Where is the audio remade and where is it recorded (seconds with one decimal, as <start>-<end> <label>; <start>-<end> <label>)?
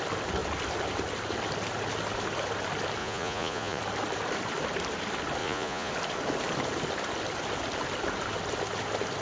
0.0-3.0 recorded; 3.0-3.8 remade; 3.8-5.4 recorded; 5.4-5.9 remade; 5.9-9.2 recorded